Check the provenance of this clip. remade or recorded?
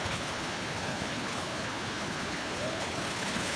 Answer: remade